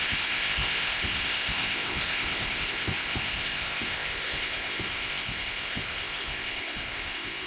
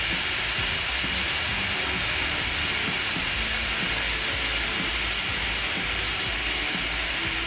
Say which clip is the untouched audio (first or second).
second